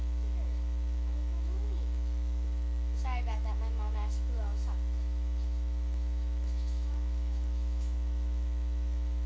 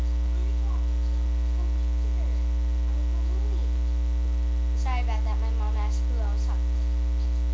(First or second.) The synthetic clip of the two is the first